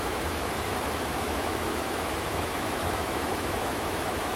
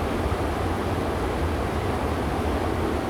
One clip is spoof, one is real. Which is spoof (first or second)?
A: first